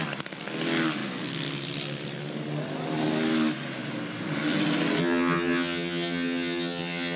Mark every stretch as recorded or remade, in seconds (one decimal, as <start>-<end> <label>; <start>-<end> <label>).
0.0-5.0 recorded; 5.0-7.2 remade